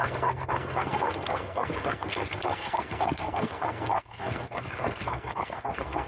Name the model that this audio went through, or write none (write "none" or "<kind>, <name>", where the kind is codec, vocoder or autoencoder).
codec, SNAC